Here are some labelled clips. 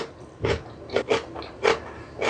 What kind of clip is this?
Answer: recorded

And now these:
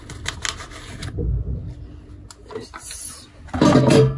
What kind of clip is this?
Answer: recorded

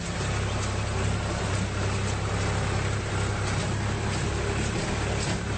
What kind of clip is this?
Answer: recorded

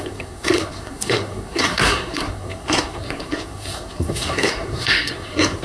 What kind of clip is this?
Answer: remade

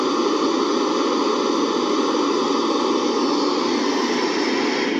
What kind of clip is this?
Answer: recorded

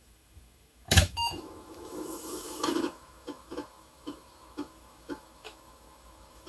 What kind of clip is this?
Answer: remade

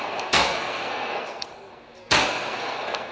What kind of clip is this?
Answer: remade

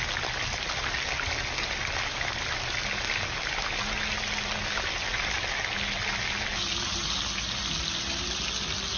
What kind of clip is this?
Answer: recorded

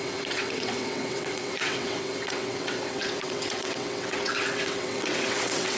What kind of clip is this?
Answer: remade